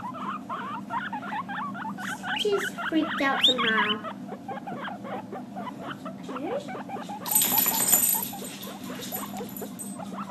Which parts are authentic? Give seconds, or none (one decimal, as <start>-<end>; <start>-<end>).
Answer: 0.0-10.3

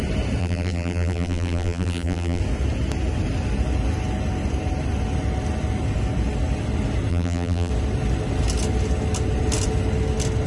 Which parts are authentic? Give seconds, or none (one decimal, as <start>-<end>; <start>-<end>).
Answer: 0.0-0.4; 2.4-7.1; 7.7-10.5